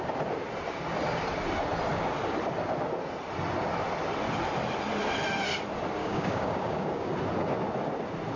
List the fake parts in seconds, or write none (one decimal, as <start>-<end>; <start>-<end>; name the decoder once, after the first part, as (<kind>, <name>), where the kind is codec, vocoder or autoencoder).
6.0-7.1 (codec, DAC)